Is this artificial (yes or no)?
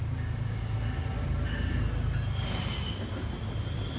no